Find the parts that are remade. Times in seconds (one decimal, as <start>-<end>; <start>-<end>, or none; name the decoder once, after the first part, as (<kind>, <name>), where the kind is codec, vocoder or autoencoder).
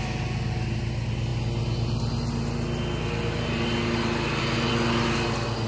none